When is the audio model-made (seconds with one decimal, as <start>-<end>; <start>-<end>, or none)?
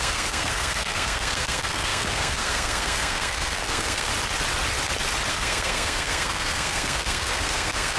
0.0-4.1; 5.3-8.0